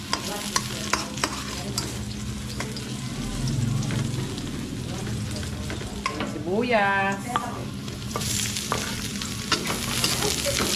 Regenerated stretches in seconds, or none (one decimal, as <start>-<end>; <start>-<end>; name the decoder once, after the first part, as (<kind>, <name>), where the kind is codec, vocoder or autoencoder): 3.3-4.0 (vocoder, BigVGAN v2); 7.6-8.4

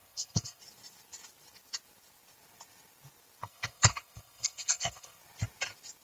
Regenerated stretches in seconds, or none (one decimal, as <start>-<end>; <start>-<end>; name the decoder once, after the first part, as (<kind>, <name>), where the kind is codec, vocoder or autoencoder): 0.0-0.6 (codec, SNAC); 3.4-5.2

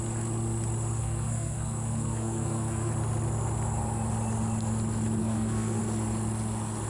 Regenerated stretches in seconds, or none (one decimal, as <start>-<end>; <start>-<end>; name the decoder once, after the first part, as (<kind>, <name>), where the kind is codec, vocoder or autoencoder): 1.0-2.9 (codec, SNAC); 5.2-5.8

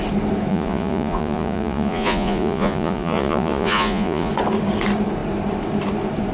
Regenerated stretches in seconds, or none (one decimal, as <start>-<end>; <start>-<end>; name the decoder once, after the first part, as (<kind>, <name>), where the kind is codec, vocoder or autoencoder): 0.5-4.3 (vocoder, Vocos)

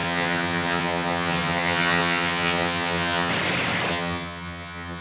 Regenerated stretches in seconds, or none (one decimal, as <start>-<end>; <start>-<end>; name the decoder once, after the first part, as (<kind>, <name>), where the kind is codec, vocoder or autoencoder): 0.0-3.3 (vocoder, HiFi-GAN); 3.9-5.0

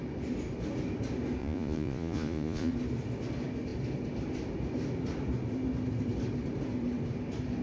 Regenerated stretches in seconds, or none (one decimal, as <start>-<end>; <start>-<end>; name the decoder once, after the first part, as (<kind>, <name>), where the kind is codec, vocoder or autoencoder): 1.4-2.7 (vocoder, Vocos)

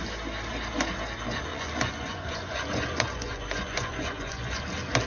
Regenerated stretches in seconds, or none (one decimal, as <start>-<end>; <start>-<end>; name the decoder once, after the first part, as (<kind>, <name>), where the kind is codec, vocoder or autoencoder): 1.5-4.6 (vocoder, Vocos)